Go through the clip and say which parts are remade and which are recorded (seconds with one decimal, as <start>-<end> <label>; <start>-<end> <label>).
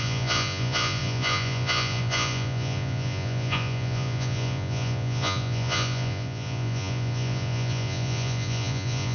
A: 0.0-9.1 remade